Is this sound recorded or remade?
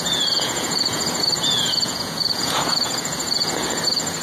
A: remade